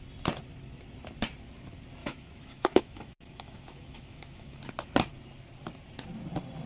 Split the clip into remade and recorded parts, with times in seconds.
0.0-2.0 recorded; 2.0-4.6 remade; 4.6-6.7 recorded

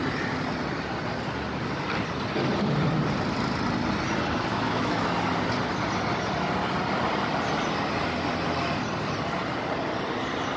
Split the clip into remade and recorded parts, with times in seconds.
0.0-4.5 recorded; 4.5-5.1 remade; 5.1-10.6 recorded

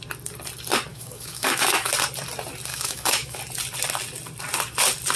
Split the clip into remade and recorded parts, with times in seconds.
0.0-0.9 recorded; 0.9-1.9 remade; 1.9-2.7 recorded; 2.7-3.4 remade; 3.4-5.2 recorded

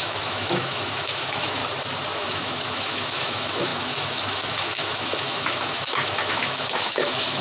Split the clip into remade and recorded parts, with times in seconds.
0.0-1.6 remade; 1.6-2.1 recorded; 2.1-7.4 remade